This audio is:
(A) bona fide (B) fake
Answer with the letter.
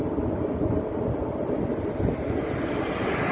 A